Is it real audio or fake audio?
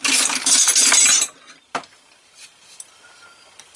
real